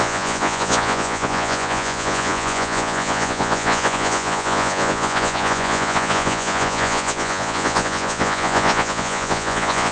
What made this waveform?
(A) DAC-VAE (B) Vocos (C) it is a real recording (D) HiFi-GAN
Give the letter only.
B